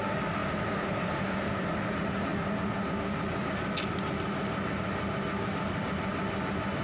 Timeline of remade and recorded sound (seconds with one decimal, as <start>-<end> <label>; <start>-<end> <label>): 0.0-0.4 recorded; 0.4-1.7 remade; 1.7-6.8 recorded

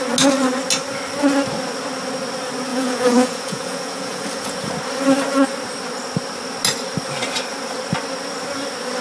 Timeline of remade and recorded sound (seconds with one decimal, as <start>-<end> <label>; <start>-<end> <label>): 0.0-2.7 recorded; 2.7-4.7 remade; 4.7-9.0 recorded

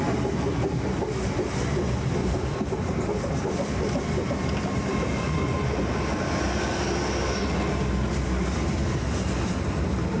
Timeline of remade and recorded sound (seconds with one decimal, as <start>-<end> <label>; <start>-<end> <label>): 0.0-2.2 recorded; 2.2-7.4 remade; 7.4-10.2 recorded

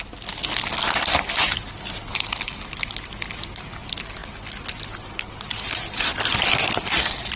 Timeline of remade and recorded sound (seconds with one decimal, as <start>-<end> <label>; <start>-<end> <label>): 0.0-7.4 recorded

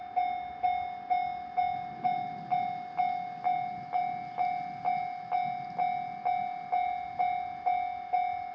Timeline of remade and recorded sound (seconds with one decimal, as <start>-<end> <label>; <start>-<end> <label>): 0.0-8.5 recorded